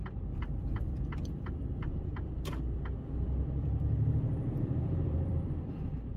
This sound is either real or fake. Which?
fake